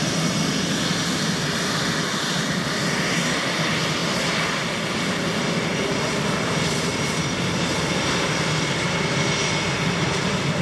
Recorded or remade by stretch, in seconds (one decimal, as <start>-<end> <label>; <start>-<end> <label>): 0.0-10.6 recorded